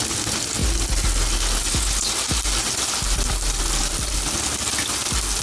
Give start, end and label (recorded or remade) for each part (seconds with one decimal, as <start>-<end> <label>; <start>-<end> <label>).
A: 0.0-5.4 recorded